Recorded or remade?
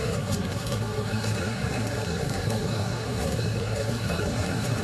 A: remade